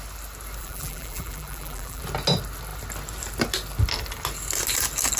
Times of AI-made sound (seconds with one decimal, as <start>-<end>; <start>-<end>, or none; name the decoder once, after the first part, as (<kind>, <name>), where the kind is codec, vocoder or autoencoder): 0.6-2.0 (vocoder, BigVGAN v2)